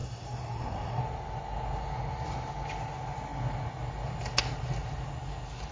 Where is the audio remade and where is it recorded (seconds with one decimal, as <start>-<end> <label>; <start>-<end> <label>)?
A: 0.0-1.0 remade; 1.0-5.7 recorded